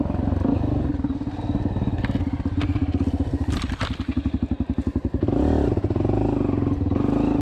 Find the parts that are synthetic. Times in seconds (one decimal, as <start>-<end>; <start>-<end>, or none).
none